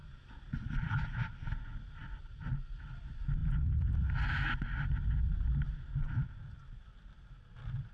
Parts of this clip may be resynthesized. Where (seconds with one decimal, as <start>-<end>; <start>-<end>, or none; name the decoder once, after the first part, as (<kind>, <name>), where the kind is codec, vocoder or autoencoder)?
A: 3.4-4.0 (vocoder, BigVGAN v2)